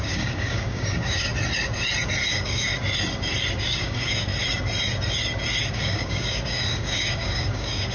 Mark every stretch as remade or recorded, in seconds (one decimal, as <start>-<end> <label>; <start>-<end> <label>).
0.0-1.3 remade; 1.3-2.3 recorded; 2.3-2.7 remade; 2.7-3.6 recorded; 3.6-4.3 remade; 4.3-5.7 recorded; 5.7-7.9 remade